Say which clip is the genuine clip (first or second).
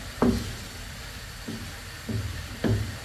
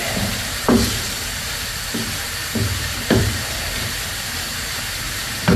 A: first